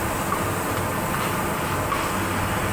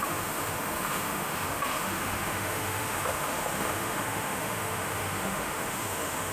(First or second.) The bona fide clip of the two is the first